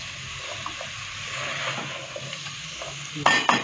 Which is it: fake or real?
real